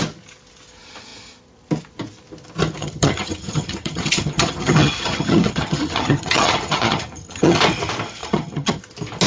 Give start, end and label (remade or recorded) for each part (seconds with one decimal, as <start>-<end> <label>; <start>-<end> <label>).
0.0-2.8 recorded; 2.8-7.6 remade; 7.6-8.2 recorded; 8.2-8.8 remade; 8.8-9.3 recorded